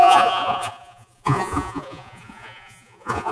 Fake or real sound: fake